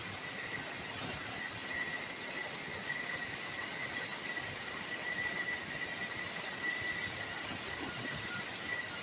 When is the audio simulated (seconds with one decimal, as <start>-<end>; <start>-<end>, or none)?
2.8-3.5